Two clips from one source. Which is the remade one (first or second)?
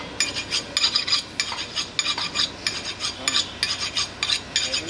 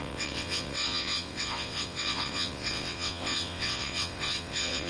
second